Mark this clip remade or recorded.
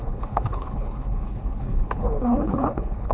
remade